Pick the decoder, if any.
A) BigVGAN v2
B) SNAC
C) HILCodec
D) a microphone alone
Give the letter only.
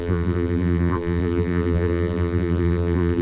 A